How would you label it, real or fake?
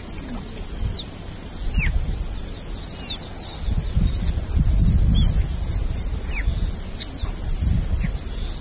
real